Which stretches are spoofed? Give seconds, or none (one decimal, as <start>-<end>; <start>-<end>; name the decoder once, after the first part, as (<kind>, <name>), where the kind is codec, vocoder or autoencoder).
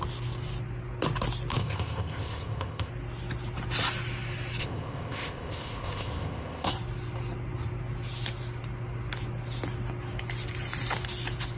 1.6-2.9 (codec, ZipCodec); 4.6-6.7